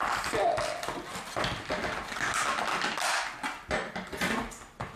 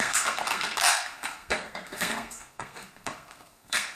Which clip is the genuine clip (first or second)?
first